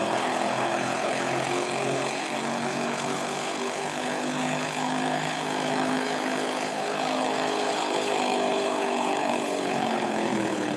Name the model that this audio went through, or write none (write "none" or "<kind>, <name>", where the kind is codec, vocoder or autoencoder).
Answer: codec, HILCodec